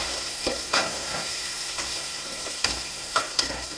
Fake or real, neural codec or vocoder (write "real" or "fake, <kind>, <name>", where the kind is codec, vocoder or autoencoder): fake, codec, SNAC